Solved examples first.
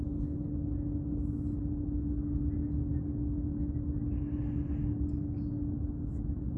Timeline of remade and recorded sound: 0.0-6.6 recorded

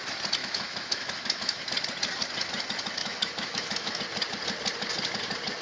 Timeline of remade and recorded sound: 0.0-0.4 recorded; 0.4-1.7 remade; 1.7-3.0 recorded; 3.0-4.0 remade; 4.0-5.6 recorded

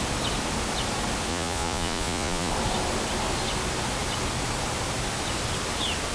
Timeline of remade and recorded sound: 0.0-1.3 recorded; 1.3-2.5 remade; 2.5-6.1 recorded